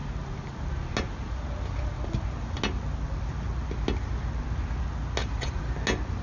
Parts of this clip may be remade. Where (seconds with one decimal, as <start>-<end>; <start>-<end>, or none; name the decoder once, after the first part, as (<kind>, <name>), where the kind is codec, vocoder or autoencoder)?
5.2-5.7 (vocoder, Vocos)